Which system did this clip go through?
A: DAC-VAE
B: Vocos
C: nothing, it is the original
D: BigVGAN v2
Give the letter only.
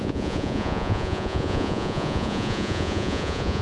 B